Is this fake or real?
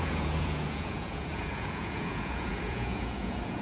fake